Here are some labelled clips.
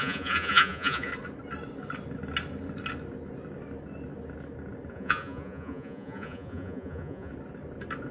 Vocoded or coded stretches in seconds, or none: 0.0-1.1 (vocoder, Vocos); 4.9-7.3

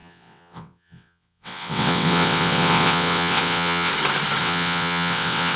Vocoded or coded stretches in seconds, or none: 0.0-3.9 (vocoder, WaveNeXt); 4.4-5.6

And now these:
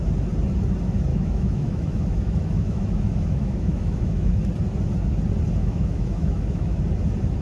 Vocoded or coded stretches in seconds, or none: 1.1-4.4 (autoencoder, DAC-VAE); 5.6-6.8

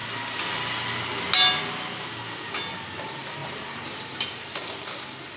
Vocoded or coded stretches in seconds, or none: 3.4-4.2 (vocoder, BigVGAN v2)

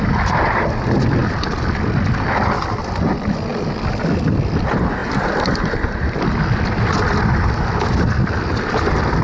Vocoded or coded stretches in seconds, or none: none

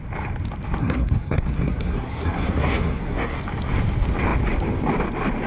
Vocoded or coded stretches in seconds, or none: 0.8-3.4 (codec, SNAC)